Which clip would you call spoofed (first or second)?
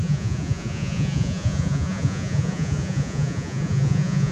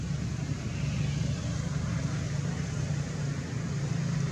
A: first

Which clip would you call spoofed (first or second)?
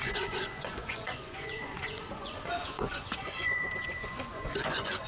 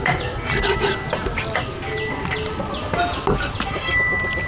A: first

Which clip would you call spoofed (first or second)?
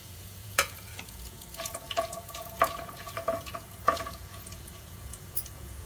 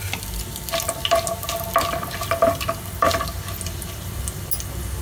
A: first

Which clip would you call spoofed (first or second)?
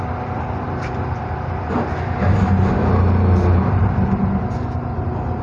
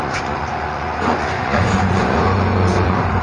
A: second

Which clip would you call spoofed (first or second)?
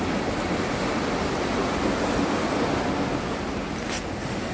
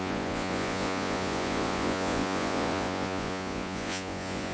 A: second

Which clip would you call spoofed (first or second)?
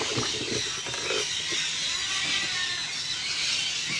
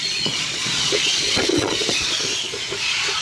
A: second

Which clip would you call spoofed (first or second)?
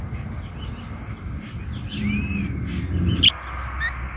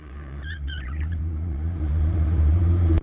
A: second